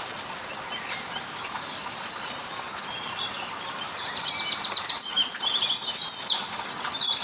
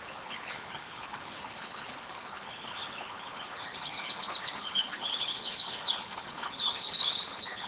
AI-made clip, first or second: second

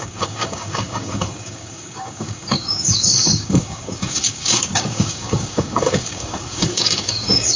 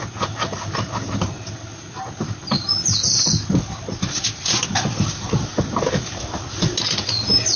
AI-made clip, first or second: first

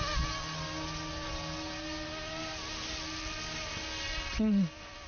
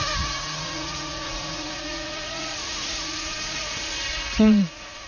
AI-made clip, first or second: second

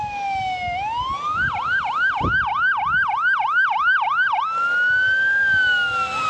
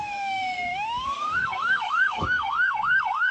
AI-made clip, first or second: second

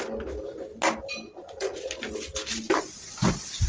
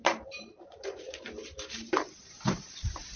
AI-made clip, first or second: second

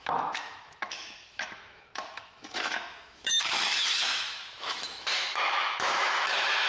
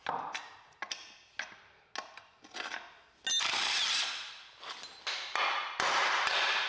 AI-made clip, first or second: first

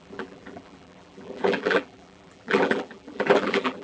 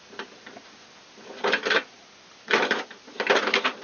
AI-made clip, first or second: first